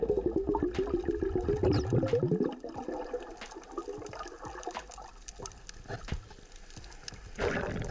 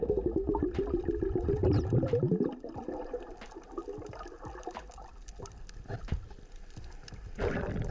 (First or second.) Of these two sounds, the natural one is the first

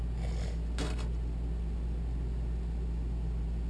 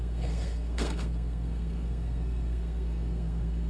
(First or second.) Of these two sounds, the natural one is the first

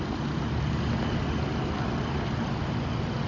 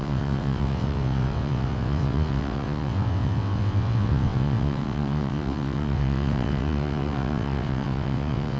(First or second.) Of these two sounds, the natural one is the first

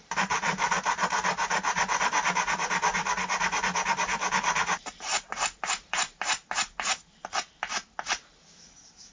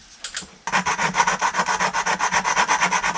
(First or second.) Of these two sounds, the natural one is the second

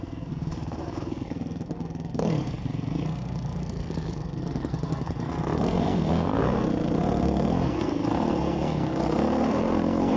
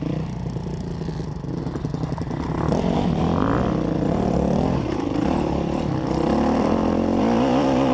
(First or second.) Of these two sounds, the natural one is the second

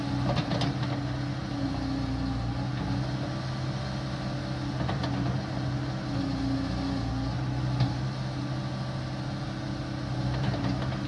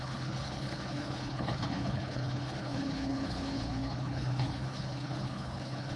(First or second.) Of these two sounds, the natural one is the first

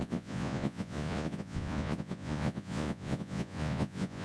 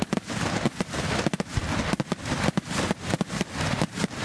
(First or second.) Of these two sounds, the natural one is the second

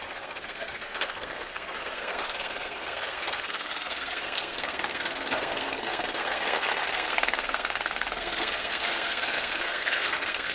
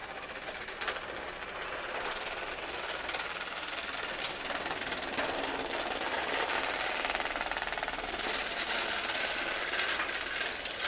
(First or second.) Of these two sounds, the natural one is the second